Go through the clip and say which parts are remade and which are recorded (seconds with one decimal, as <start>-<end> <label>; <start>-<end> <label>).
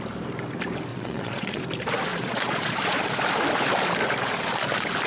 0.0-0.9 recorded; 0.9-1.6 remade; 1.6-2.1 recorded; 2.1-3.1 remade; 3.1-5.1 recorded